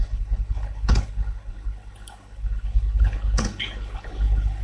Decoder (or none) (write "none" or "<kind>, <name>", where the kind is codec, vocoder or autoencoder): codec, HILCodec